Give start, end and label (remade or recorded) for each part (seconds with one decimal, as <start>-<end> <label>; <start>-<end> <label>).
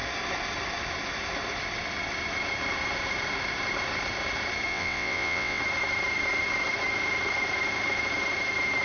0.0-4.7 recorded; 4.7-5.6 remade; 5.6-8.8 recorded